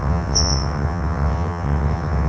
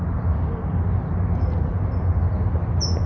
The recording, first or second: second